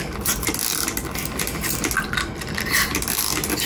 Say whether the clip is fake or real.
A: real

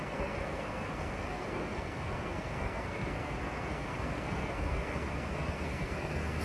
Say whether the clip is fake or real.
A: fake